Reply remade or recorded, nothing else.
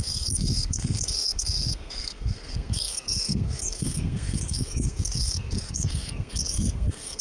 remade